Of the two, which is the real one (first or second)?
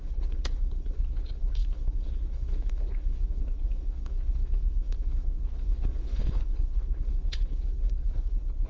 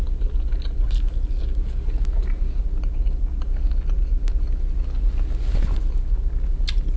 second